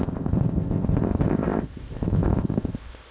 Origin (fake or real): fake